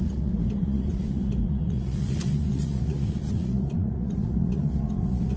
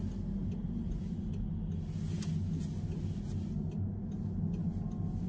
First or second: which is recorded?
second